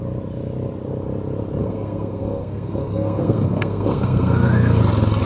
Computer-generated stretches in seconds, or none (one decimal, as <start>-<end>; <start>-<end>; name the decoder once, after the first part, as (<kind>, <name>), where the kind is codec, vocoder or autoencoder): 1.6-4.8 (codec, SNAC)